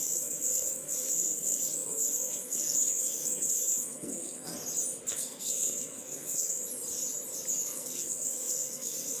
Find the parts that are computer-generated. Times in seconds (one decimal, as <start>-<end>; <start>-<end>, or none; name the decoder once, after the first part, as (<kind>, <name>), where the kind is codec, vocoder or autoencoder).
0.0-4.5 (codec, SNAC); 5.1-6.6; 7.6-9.2